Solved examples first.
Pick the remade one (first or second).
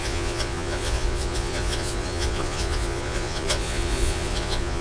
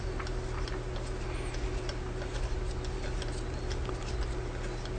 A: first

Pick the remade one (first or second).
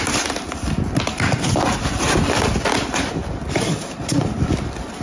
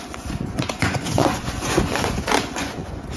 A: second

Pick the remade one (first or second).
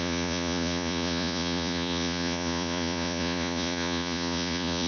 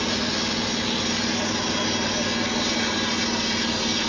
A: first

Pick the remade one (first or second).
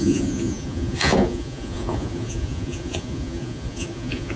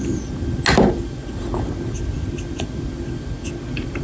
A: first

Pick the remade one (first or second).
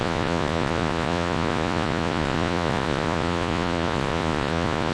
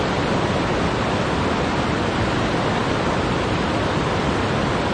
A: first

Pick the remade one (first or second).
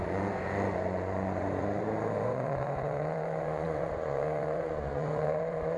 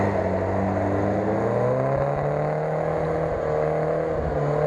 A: first